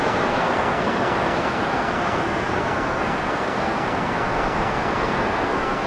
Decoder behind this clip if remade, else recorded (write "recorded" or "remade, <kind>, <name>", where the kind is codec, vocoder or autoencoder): remade, codec, SNAC